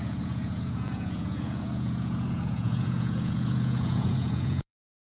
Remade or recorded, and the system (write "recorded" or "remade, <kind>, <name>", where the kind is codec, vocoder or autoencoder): remade, vocoder, Vocos